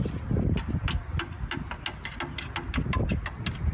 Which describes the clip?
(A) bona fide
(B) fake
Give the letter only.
A